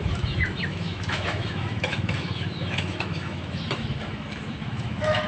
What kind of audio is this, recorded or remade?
remade